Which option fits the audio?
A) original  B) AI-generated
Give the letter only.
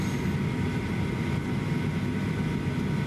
A